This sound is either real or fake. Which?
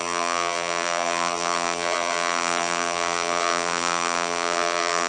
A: fake